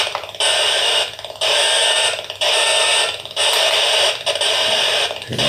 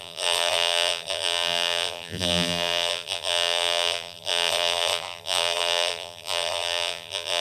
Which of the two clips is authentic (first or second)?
first